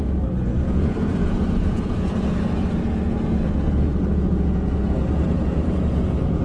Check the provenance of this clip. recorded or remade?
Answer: remade